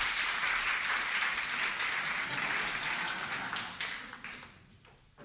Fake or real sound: real